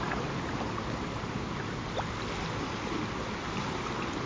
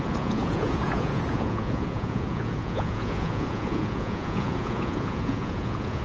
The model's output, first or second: second